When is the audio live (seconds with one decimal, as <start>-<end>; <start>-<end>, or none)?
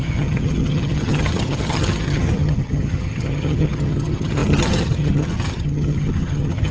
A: none